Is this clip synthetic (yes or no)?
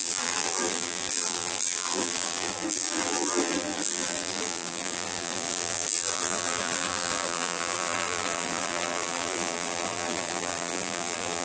yes